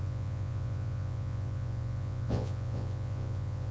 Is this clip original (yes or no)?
no